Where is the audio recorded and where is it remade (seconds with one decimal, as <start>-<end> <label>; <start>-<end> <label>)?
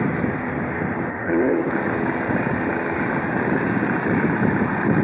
0.0-1.1 recorded; 1.1-1.7 remade; 1.7-5.0 recorded